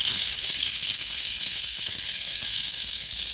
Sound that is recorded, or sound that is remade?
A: remade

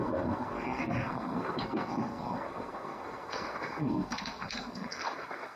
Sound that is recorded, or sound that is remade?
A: remade